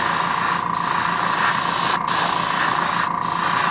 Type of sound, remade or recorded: recorded